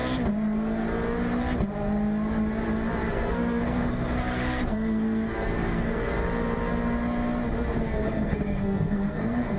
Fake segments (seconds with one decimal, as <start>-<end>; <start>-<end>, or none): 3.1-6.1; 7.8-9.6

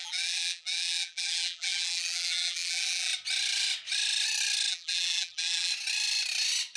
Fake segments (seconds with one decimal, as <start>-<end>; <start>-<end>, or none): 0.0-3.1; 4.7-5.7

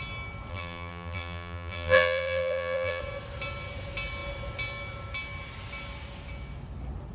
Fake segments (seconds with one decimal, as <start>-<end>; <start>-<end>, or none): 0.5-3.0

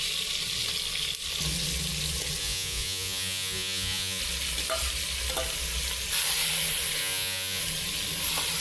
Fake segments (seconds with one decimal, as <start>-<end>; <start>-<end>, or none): 2.4-4.2; 7.0-7.6

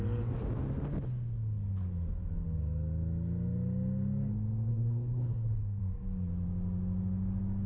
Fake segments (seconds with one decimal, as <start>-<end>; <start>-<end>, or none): 4.7-5.8